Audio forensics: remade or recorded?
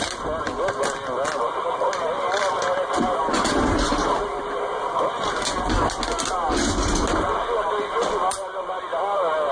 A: recorded